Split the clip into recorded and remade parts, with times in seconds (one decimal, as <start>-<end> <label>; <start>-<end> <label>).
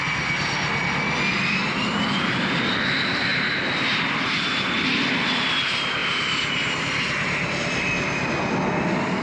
0.0-9.2 recorded